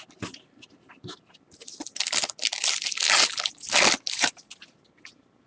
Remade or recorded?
recorded